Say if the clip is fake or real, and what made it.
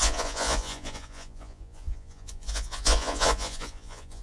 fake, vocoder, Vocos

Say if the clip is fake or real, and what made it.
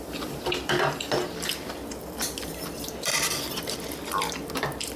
fake, vocoder, BigVGAN v2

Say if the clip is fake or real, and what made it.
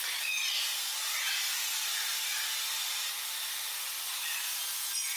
real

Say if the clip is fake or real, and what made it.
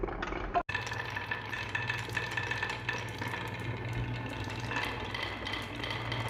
real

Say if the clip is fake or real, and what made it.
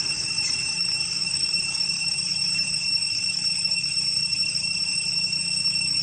fake, autoencoder, DAC-VAE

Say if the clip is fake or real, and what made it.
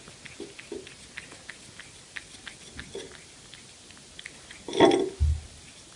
real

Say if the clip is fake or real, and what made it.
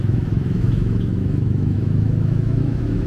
fake, autoencoder, DAC-VAE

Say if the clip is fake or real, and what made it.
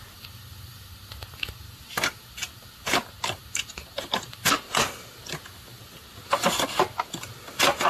real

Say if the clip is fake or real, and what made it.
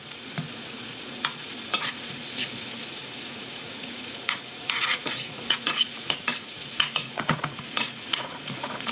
fake, vocoder, Vocos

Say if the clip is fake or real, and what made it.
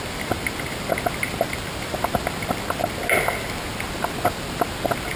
real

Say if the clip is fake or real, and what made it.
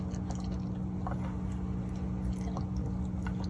real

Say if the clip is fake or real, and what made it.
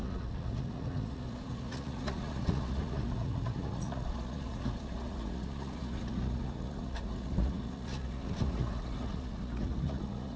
fake, vocoder, Vocos